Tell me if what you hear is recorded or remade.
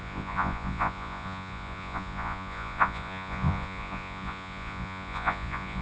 remade